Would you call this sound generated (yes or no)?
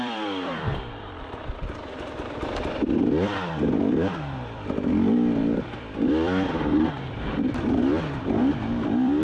yes